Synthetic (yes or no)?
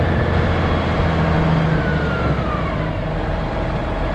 no